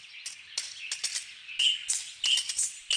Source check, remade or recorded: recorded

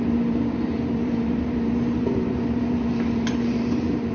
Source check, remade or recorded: remade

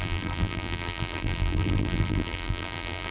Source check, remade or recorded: remade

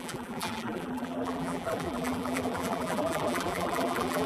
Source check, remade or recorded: remade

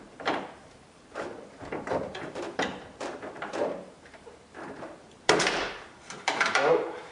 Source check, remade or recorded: remade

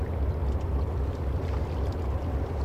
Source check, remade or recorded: recorded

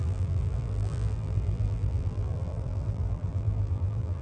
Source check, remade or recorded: remade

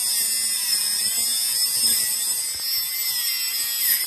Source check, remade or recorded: recorded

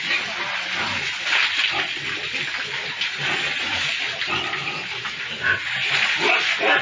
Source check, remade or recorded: recorded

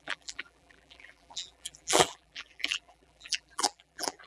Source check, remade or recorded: remade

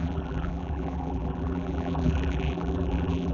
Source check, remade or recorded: remade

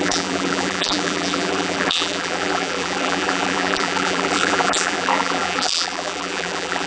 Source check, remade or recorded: remade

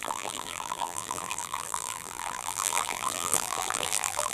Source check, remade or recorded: remade